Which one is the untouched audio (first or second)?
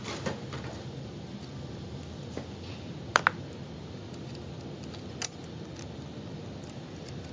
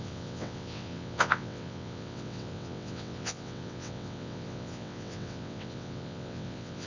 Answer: first